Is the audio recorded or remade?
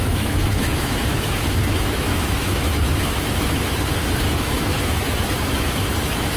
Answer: remade